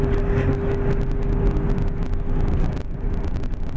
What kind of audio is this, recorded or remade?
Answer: recorded